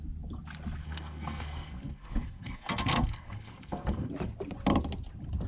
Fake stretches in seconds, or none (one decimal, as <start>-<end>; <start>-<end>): 0.8-4.1